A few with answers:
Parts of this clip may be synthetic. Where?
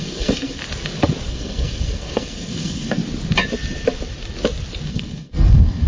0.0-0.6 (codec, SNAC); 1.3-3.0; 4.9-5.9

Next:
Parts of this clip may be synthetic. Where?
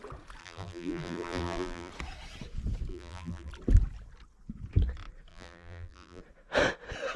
0.4-1.9 (vocoder, BigVGAN v2); 2.9-3.5; 5.3-6.2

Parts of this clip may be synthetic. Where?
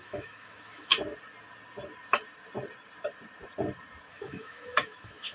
0.0-0.9 (autoencoder, DAC-VAE); 4.1-5.3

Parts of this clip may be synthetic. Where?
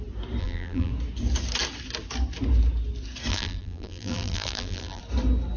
0.4-0.9 (vocoder, BigVGAN v2); 3.3-5.0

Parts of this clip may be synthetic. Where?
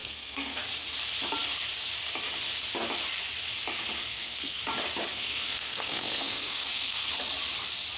0.0-0.6 (codec, SNAC); 4.0-4.6; 5.1-7.1